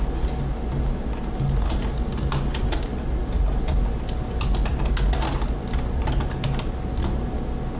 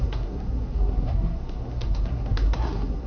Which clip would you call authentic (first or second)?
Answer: first